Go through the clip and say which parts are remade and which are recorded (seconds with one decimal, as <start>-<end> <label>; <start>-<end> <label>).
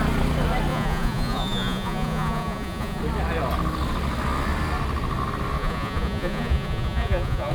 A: 0.0-0.7 recorded; 0.7-3.0 remade; 3.0-5.6 recorded; 5.6-7.5 remade